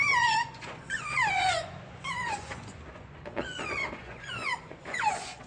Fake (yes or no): yes